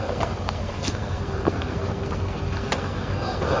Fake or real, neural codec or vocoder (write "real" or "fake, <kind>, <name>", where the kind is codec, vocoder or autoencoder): fake, codec, SNAC